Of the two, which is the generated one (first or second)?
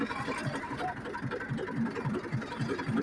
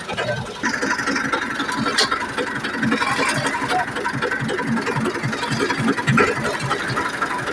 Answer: first